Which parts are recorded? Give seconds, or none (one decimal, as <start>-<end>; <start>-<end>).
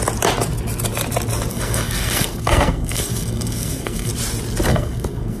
0.0-1.5; 4.1-4.7